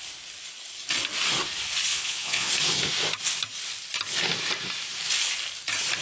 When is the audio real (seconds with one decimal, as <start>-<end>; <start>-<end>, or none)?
0.0-1.9; 2.5-6.0